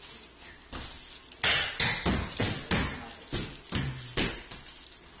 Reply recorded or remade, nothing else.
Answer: recorded